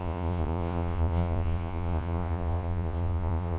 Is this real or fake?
fake